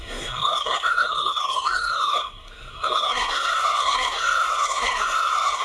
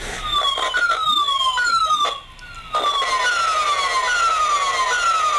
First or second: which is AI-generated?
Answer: first